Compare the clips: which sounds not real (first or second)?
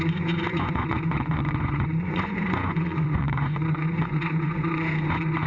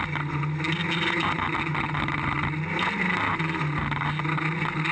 first